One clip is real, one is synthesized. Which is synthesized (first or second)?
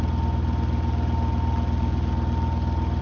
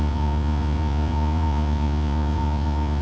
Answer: second